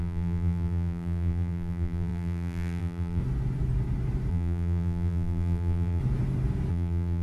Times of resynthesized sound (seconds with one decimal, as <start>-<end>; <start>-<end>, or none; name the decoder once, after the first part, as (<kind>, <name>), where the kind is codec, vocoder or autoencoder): 0.0-3.2 (vocoder, BigVGAN v2); 4.3-6.0; 6.7-7.2